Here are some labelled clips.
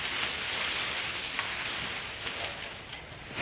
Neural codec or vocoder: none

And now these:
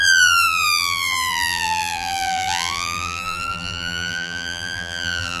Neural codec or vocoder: vocoder, BigVGAN v2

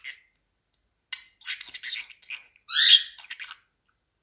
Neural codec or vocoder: none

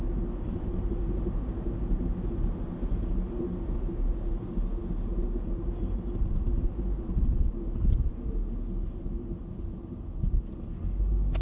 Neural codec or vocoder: none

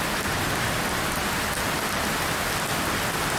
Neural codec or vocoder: none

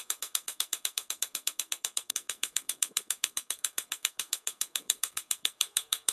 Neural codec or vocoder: codec, SNAC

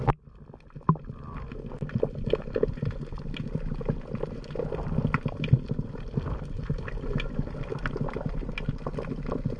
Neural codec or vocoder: none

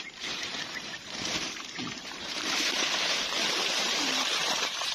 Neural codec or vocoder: vocoder, BigVGAN v2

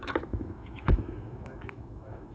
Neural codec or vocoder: autoencoder, DAC-VAE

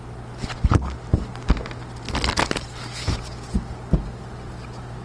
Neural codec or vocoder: none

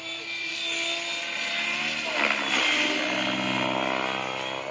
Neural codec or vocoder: none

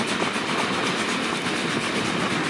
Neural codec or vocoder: none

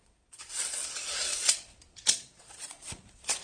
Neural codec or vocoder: vocoder, Vocos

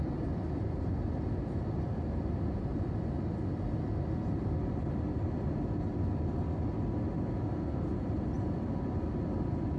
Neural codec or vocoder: none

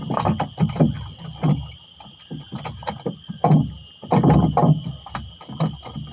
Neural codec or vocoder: none